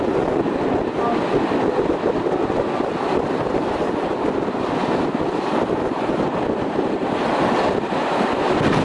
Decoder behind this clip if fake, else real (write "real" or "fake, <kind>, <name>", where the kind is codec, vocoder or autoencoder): real